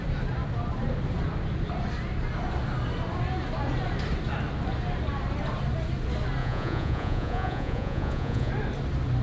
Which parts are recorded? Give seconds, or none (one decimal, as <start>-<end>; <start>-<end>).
0.0-6.4; 8.5-9.2